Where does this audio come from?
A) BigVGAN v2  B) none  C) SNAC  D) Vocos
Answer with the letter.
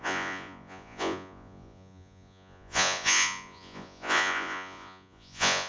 D